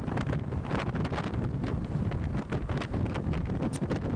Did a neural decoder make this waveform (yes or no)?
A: no